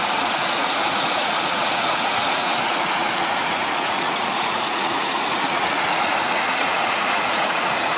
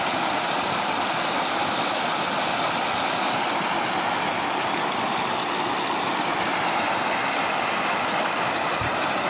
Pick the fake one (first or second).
first